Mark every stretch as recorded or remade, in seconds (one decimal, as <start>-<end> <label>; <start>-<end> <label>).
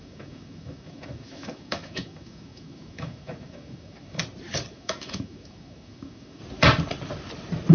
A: 0.0-4.2 remade; 4.2-4.7 recorded; 4.7-6.4 remade; 6.4-7.7 recorded